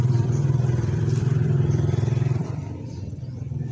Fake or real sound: fake